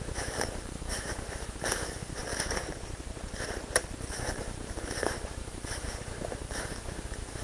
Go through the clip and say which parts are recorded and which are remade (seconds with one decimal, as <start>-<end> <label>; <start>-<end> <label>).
0.0-2.2 remade; 2.2-4.1 recorded; 4.1-7.4 remade